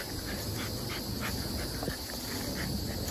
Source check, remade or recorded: recorded